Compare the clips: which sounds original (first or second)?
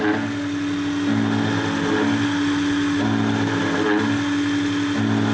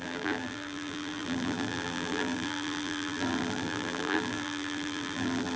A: first